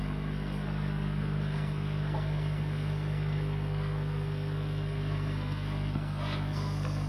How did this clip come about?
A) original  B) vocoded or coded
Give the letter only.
B